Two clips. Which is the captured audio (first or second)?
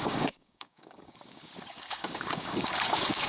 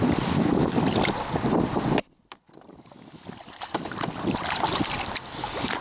second